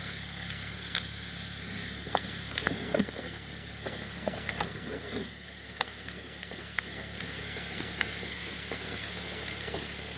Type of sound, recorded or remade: remade